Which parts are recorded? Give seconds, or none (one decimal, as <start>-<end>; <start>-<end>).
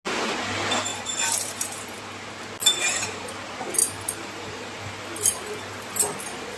0.0-0.9; 2.0-2.6; 3.3-3.8; 4.8-6.6